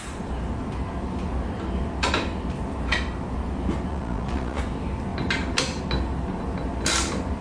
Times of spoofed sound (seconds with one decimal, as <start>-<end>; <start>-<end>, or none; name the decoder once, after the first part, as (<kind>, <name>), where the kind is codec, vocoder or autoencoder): 3.9-4.6 (vocoder, Vocos)